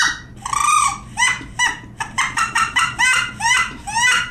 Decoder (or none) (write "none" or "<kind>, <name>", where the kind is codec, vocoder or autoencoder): vocoder, BigVGAN v2